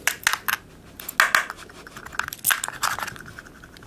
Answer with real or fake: real